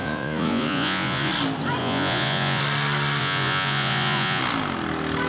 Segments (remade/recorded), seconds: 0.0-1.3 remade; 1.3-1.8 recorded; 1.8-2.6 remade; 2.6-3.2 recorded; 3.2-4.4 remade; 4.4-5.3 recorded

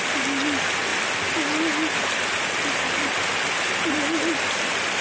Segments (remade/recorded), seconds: 0.0-5.0 recorded

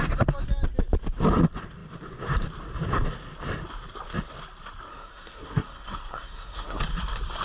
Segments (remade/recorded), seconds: 0.0-4.9 recorded; 4.9-6.8 remade; 6.8-7.4 recorded

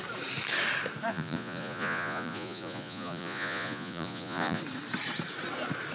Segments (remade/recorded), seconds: 0.0-1.1 recorded; 1.1-4.6 remade; 4.6-5.9 recorded

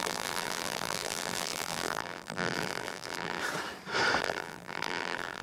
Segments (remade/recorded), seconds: 0.0-3.4 remade; 3.4-4.2 recorded; 4.2-5.4 remade

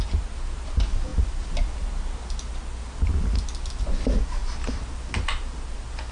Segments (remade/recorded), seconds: 0.0-6.1 recorded

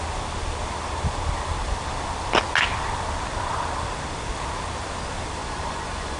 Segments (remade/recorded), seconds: 0.0-5.4 recorded; 5.4-6.2 remade

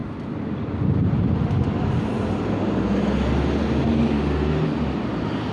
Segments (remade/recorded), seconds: 0.0-5.5 recorded